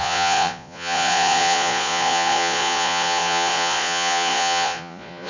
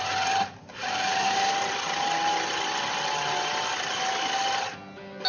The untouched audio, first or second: second